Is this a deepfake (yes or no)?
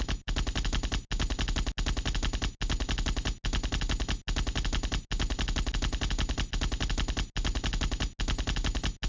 no